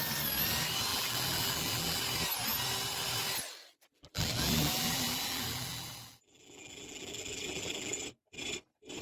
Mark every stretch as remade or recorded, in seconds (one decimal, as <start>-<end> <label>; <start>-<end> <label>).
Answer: 0.0-0.9 recorded; 0.9-2.0 remade; 2.0-3.9 recorded; 3.9-8.0 remade; 8.0-9.0 recorded